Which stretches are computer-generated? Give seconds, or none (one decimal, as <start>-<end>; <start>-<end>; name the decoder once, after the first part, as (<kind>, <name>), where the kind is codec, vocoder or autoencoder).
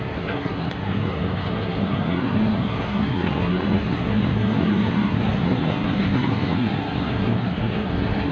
0.0-8.3 (codec, SNAC)